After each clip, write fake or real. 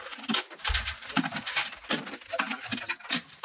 real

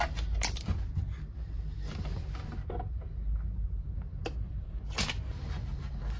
real